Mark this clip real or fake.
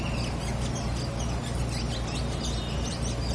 real